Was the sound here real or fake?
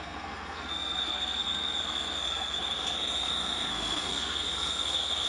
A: fake